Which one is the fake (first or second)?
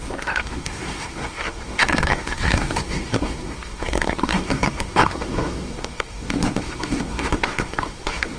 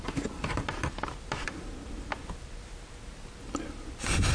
first